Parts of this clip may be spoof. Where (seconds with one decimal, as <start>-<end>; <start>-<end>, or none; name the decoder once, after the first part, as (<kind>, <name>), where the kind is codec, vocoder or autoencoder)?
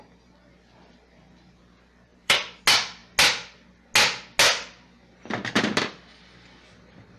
2.1-2.6 (vocoder, BigVGAN v2)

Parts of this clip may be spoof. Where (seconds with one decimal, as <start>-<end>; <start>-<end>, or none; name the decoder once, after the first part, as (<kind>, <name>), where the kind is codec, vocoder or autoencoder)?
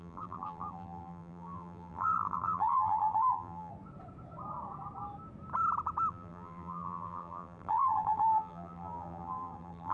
0.0-3.7 (vocoder, BigVGAN v2); 6.1-9.9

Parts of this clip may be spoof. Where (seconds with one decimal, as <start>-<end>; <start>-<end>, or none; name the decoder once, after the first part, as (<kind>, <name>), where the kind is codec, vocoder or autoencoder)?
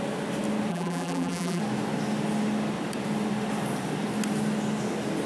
0.7-1.6 (vocoder, BigVGAN v2)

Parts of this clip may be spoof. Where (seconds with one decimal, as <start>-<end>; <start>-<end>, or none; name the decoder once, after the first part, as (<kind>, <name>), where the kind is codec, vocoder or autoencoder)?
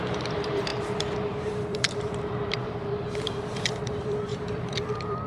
0.0-5.3 (vocoder, BigVGAN v2)